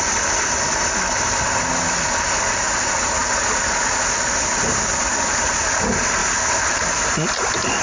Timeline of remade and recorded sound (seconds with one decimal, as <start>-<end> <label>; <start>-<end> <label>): 0.0-7.8 recorded

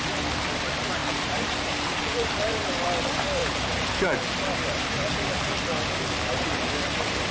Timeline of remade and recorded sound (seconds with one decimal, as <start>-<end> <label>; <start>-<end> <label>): 0.0-1.0 recorded; 1.0-2.7 remade; 2.7-3.4 recorded; 3.4-5.5 remade; 5.5-6.3 recorded; 6.3-7.3 remade